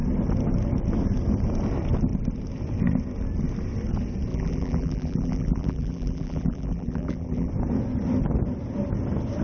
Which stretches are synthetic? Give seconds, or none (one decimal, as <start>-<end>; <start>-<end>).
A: 4.3-7.5